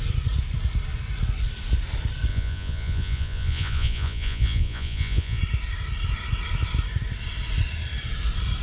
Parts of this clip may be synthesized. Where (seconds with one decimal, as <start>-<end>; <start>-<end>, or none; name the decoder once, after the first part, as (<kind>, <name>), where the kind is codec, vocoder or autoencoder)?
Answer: 2.3-5.4 (vocoder, Vocos)